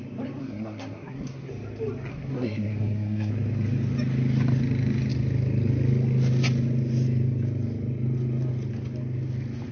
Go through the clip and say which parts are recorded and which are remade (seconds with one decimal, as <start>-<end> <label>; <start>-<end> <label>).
0.0-0.4 recorded; 0.4-1.5 remade; 1.5-2.1 recorded; 2.1-3.3 remade; 3.3-9.7 recorded

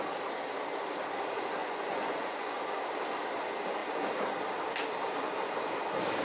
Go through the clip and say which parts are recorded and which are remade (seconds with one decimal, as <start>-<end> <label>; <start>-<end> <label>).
0.0-1.6 recorded; 1.6-2.6 remade; 2.6-6.2 recorded